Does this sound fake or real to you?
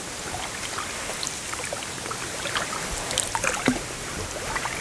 real